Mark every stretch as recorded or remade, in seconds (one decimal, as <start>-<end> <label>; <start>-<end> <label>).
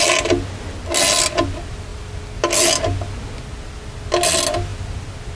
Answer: 0.0-5.3 recorded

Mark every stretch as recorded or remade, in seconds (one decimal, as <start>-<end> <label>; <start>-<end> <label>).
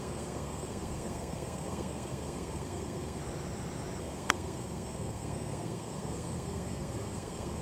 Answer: 0.0-3.2 remade; 3.2-4.0 recorded; 4.0-7.6 remade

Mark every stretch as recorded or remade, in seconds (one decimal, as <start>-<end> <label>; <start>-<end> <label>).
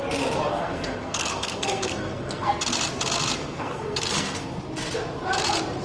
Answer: 0.0-0.5 recorded; 0.5-2.5 remade; 2.5-3.4 recorded; 3.4-4.6 remade; 4.6-5.8 recorded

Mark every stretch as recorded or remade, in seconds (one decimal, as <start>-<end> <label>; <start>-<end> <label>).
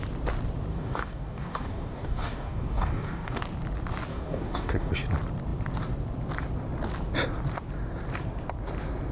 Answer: 0.0-0.7 recorded; 0.7-3.4 remade; 3.4-4.1 recorded; 4.1-4.9 remade; 4.9-9.1 recorded